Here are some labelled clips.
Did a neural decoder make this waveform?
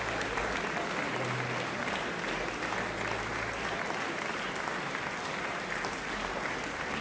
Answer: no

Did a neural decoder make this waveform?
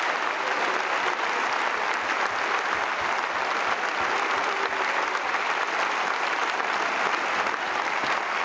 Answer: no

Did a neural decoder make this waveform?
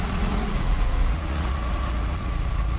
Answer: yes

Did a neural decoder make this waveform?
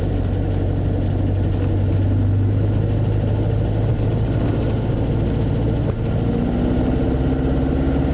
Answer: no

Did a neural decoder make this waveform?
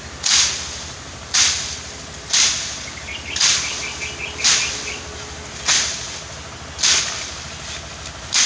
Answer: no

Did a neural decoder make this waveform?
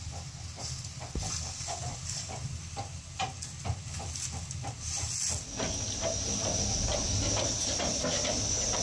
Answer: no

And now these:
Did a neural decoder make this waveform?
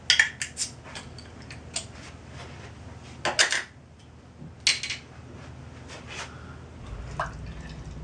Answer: no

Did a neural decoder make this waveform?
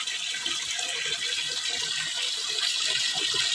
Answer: no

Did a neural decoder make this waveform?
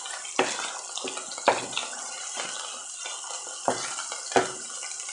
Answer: no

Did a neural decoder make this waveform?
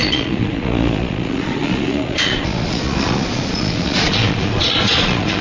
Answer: yes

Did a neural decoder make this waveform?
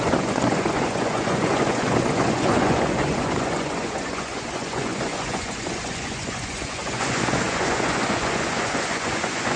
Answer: yes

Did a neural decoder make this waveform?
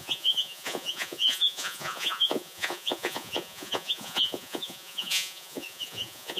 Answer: yes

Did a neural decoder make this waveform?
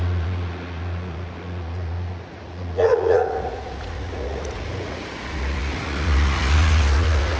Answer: yes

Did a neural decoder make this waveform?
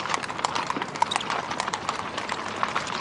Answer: no